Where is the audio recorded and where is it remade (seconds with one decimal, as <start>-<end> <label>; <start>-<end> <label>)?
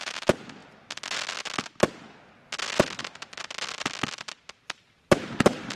0.0-5.8 recorded